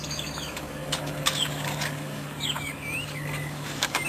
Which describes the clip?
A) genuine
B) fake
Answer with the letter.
B